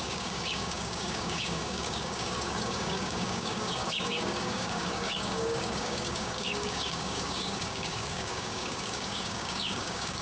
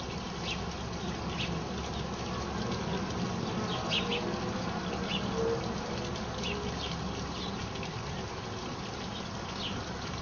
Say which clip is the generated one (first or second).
first